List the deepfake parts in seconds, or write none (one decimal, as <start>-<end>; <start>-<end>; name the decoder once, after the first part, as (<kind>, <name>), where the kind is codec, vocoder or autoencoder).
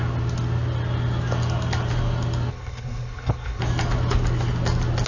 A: 2.5-3.6 (codec, HILCodec)